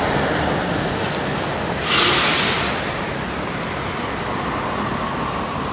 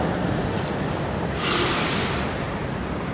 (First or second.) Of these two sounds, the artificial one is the second